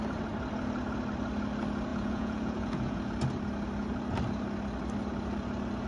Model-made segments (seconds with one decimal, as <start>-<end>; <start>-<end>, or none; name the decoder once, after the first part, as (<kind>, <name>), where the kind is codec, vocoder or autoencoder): 1.9-3.0 (vocoder, Vocos)